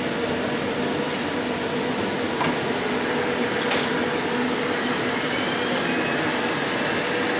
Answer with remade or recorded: recorded